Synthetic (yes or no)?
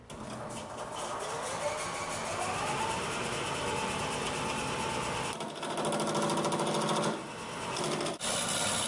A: no